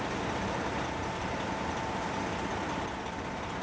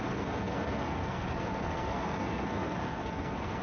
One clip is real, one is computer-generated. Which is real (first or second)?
first